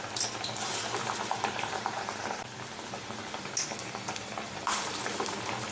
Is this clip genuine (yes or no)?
yes